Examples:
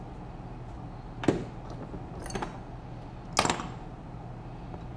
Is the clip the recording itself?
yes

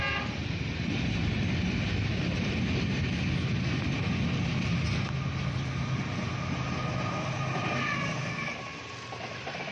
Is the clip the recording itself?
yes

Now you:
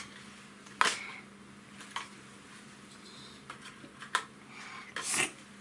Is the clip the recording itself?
yes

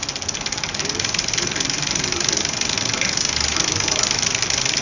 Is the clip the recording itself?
yes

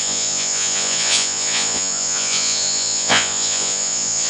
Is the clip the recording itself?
no